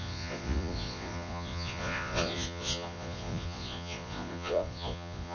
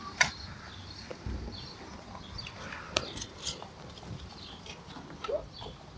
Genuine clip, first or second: second